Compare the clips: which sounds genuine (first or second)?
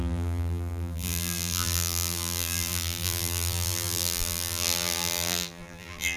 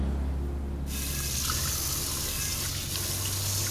second